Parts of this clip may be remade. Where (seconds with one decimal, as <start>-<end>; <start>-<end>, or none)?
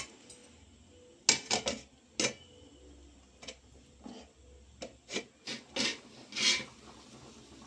none